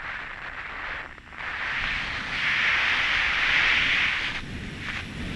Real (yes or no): yes